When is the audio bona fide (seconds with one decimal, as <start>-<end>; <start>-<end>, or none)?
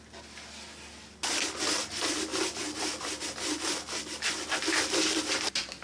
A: 0.0-5.8